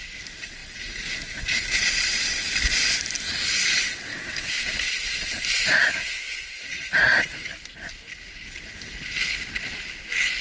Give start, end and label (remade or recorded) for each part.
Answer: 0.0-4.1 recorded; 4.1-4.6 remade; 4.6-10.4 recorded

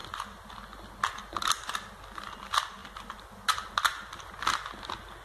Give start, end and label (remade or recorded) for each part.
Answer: 0.0-5.2 recorded

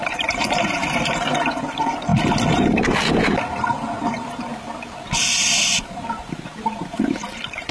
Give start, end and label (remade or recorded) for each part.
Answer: 0.0-2.1 remade; 2.1-4.0 recorded; 4.0-4.5 remade; 4.5-5.3 recorded; 5.3-7.7 remade

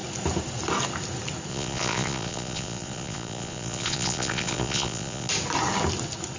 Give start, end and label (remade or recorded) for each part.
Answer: 0.0-1.5 recorded; 1.5-5.3 remade; 5.3-6.4 recorded